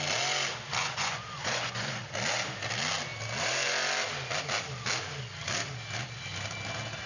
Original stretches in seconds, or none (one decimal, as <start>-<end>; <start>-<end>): 0.0-0.8; 2.0-7.1